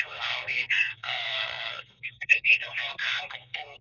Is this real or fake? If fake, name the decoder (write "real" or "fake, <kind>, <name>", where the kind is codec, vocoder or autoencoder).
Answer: fake, codec, SNAC